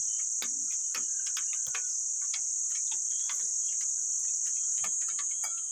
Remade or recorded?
recorded